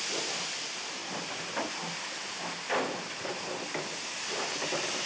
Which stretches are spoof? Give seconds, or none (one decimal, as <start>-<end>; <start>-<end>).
none